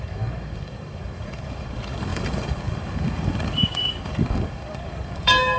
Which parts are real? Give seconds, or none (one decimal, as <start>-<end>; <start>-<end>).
none